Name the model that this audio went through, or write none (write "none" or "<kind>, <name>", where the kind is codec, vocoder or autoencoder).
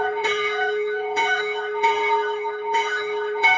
autoencoder, DAC-VAE